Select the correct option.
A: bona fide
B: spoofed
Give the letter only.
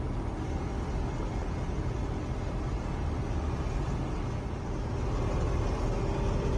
A